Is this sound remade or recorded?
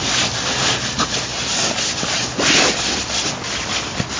recorded